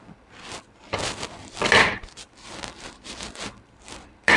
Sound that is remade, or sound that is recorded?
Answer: remade